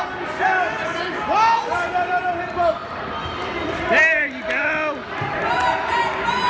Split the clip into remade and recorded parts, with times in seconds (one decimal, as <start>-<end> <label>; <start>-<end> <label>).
0.0-6.5 recorded

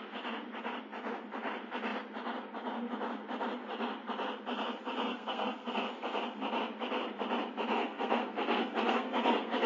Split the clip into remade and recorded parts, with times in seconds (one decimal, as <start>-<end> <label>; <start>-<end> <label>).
0.0-5.1 recorded; 5.1-5.7 remade; 5.7-7.8 recorded; 7.8-9.7 remade

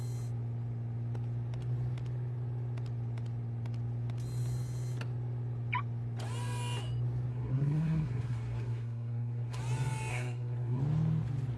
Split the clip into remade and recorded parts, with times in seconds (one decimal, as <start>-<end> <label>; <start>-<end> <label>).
0.0-7.3 recorded; 7.3-9.6 remade; 9.6-10.1 recorded; 10.1-10.8 remade; 10.8-11.6 recorded

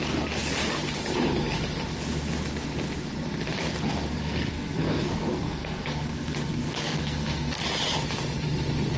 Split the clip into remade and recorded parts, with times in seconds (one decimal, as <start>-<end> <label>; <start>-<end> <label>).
0.0-4.1 recorded; 4.1-7.6 remade; 7.6-9.0 recorded

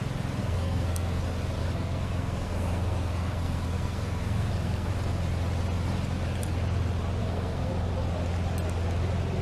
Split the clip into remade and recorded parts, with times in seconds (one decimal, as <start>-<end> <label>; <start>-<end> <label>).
0.0-0.4 recorded; 0.4-1.2 remade; 1.2-1.6 recorded; 1.6-4.9 remade; 4.9-7.2 recorded; 7.2-7.7 remade; 7.7-9.4 recorded

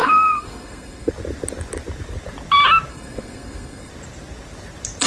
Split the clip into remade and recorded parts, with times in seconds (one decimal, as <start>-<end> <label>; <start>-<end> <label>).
0.0-1.1 remade; 1.1-2.9 recorded; 2.9-3.9 remade; 3.9-5.1 recorded

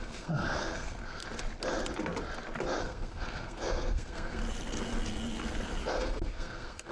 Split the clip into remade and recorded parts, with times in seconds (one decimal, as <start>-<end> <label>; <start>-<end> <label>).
0.0-1.2 remade; 1.2-2.8 recorded; 2.8-4.4 remade; 4.4-5.8 recorded; 5.8-6.9 remade